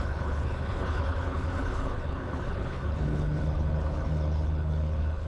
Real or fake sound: fake